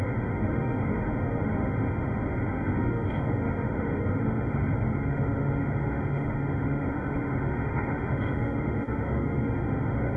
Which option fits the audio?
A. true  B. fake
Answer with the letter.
B